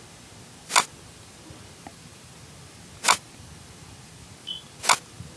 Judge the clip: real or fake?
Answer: real